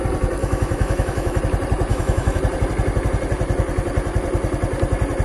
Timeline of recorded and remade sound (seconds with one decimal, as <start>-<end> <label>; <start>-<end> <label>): 0.0-0.4 recorded; 0.4-1.4 remade; 1.4-1.9 recorded; 1.9-2.4 remade; 2.4-5.2 recorded